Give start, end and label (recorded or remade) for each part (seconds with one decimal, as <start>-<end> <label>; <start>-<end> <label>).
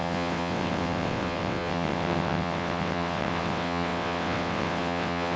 0.0-5.4 remade